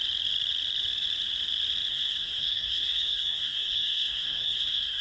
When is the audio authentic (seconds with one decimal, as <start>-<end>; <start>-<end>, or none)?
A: 0.0-1.9

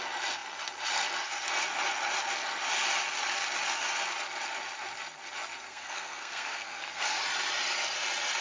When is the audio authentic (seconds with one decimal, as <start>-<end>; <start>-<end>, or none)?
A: 0.0-5.7; 7.2-8.4

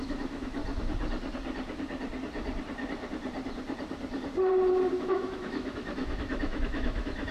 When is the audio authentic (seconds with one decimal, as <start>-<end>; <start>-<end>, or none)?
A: 0.6-5.0

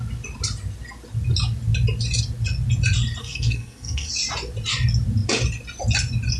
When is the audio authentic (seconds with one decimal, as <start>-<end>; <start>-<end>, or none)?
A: 0.0-3.2; 4.1-6.4

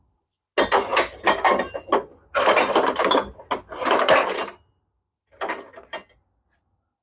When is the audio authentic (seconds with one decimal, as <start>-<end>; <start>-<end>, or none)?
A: 0.0-7.0

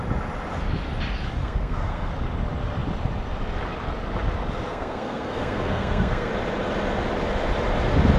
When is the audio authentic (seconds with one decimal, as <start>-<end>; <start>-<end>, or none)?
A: 0.0-1.4; 2.1-4.7; 6.3-8.2

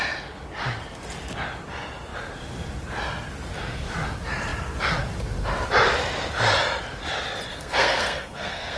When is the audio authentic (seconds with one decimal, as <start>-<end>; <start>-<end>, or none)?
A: 0.0-7.5